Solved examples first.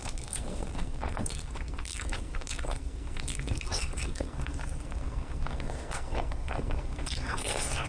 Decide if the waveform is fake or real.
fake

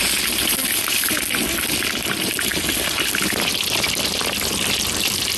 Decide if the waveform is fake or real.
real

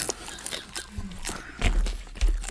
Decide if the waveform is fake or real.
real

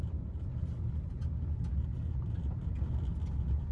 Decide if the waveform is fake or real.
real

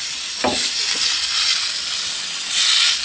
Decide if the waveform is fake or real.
real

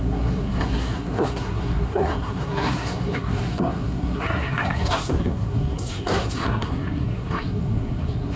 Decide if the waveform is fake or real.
fake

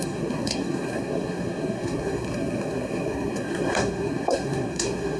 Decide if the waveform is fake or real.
fake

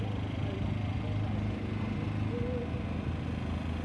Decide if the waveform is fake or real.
real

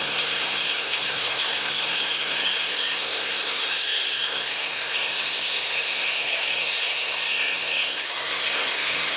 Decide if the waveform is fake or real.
fake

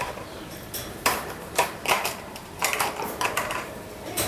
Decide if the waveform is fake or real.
fake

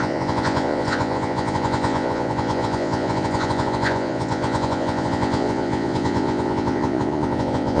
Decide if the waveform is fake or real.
fake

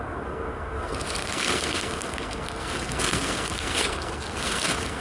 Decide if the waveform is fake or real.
fake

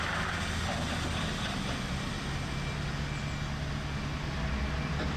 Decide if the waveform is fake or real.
real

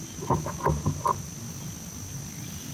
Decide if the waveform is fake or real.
real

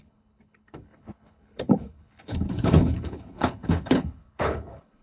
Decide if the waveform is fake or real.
fake